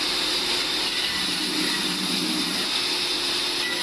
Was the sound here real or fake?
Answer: real